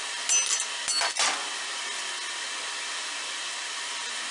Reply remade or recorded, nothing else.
recorded